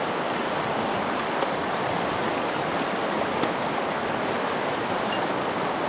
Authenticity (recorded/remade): recorded